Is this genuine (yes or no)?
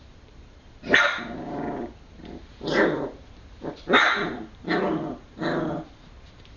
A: no